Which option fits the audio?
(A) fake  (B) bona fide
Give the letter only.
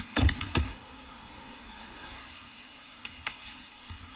A